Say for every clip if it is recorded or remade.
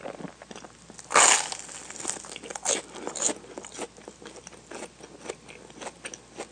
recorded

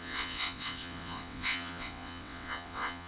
remade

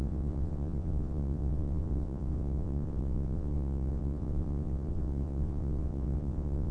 remade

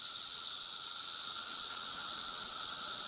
remade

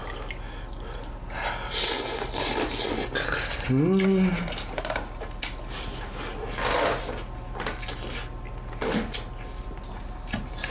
recorded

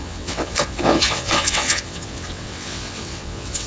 remade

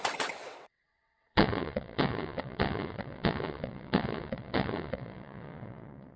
remade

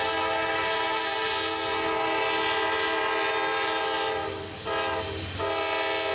recorded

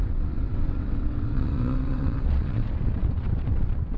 remade